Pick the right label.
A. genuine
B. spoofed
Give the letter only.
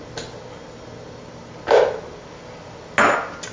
A